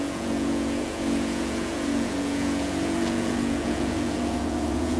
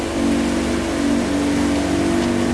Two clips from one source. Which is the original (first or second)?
second